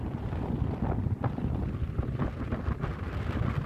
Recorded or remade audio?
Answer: recorded